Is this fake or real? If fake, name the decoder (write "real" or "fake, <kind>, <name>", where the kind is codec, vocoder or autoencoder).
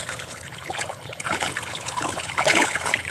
fake, codec, HILCodec